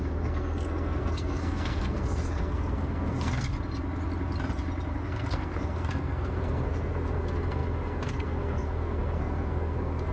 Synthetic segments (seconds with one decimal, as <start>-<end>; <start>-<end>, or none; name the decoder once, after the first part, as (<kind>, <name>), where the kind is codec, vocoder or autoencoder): 0.0-3.5 (codec, SNAC); 4.9-10.1